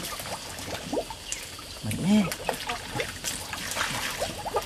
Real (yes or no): yes